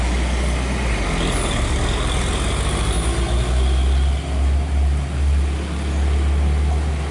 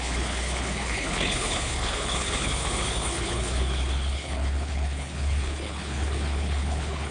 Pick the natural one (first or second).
first